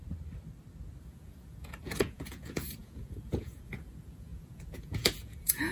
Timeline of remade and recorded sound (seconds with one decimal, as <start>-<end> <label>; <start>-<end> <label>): 0.0-1.0 recorded; 1.0-5.7 remade